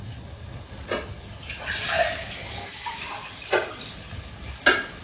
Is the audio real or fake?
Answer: real